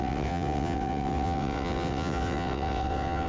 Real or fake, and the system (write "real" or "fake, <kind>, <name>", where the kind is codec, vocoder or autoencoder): fake, vocoder, WaveNeXt